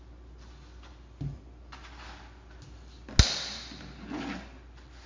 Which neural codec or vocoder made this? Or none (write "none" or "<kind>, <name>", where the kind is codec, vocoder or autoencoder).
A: none